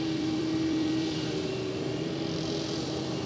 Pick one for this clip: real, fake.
fake